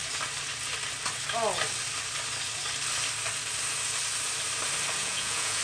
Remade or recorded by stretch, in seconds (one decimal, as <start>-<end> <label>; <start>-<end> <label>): 0.0-5.0 recorded; 5.0-5.6 remade

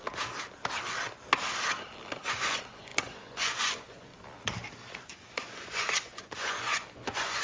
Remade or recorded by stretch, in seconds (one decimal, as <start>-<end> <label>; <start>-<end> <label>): 0.0-2.3 recorded; 2.3-4.1 remade; 4.1-5.0 recorded; 5.0-7.4 remade

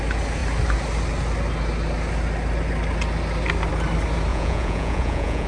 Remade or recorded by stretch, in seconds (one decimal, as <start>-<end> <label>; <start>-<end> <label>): 0.0-4.3 recorded; 4.3-5.5 remade

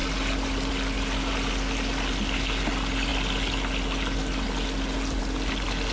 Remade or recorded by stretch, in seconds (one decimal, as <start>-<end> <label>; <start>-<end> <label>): 0.0-5.9 recorded

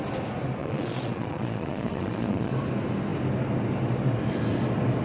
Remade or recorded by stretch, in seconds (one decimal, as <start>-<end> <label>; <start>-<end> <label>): 0.0-0.6 recorded; 0.6-2.5 remade; 2.5-5.0 recorded

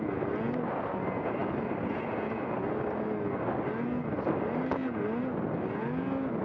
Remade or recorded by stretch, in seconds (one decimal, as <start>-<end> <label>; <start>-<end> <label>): 0.0-6.4 recorded

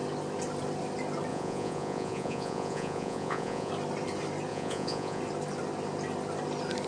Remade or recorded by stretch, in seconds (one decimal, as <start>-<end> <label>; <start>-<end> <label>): 0.0-1.3 recorded; 1.3-3.7 remade; 3.7-4.5 recorded; 4.5-5.2 remade; 5.2-6.9 recorded